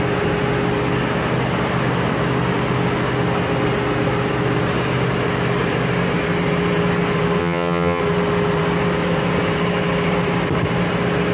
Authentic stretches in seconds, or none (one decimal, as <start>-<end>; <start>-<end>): 0.0-7.4; 8.0-11.3